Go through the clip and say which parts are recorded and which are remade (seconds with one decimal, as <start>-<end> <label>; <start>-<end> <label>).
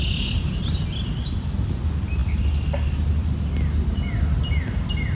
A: 0.0-5.1 recorded